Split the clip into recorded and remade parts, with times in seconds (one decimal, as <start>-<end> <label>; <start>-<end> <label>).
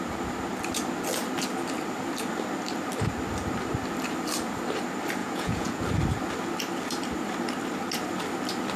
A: 0.0-5.2 recorded; 5.2-5.8 remade; 5.8-8.8 recorded